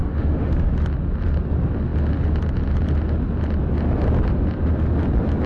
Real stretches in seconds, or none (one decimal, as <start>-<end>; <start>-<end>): 0.7-5.5